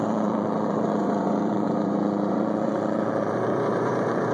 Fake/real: fake